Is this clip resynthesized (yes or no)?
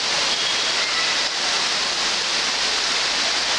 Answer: no